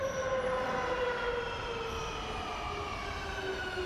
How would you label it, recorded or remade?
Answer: recorded